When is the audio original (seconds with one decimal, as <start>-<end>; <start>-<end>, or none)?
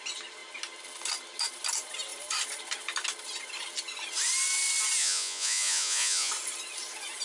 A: 0.0-5.0; 6.3-7.2